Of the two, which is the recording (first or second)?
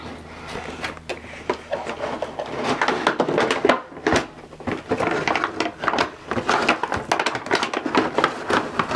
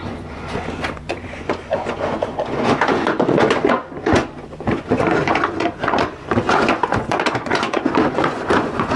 first